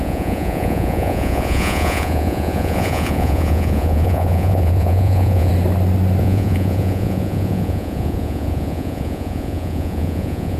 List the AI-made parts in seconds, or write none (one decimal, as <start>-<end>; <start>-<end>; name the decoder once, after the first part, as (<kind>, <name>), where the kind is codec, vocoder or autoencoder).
0.0-5.5 (vocoder, Vocos); 6.2-10.6